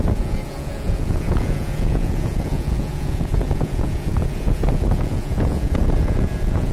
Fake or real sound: fake